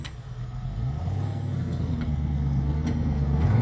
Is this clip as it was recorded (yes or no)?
no